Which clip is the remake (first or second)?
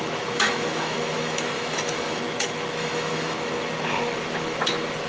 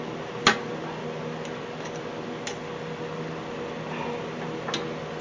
first